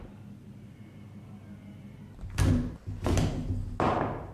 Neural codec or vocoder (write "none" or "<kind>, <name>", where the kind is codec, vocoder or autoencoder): none